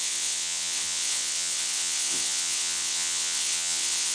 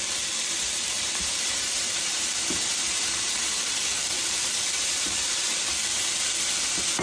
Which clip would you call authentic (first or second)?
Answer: second